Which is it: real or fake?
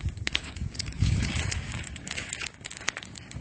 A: fake